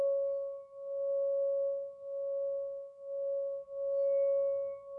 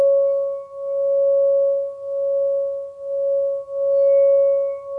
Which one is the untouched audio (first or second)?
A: second